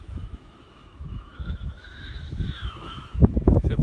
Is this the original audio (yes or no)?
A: no